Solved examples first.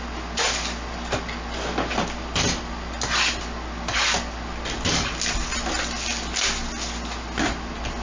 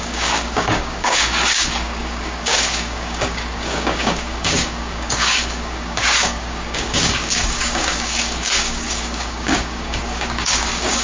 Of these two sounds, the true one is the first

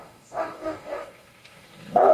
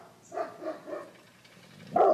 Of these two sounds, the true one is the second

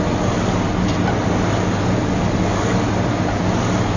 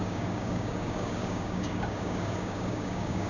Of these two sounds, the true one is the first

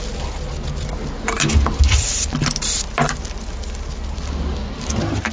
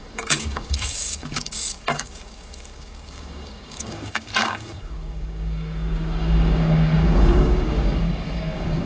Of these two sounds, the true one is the first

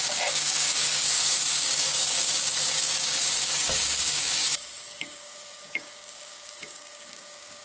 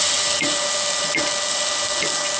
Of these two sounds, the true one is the second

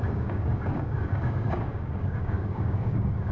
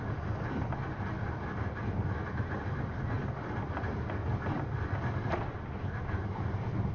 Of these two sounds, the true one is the second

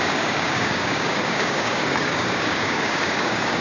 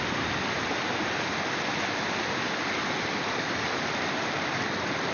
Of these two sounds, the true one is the second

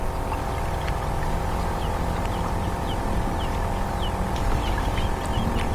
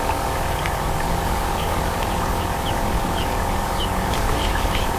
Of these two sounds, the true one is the first